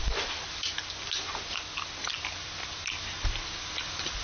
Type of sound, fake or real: real